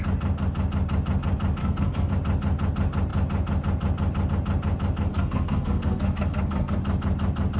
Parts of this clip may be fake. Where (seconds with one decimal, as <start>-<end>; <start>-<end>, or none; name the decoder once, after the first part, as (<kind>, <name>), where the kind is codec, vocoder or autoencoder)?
1.6-2.1 (codec, SNAC); 5.1-6.8